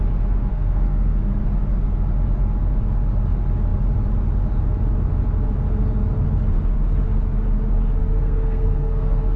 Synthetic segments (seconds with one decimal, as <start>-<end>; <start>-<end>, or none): 0.5-1.4; 8.0-9.4